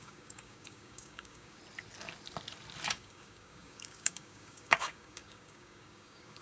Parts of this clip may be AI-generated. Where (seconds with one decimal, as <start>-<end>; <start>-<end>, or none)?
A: 0.0-1.6; 2.9-6.4